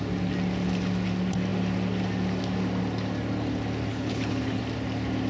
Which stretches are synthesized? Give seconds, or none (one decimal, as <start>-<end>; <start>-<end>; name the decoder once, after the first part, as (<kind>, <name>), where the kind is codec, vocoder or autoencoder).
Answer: 3.9-4.6 (codec, HILCodec)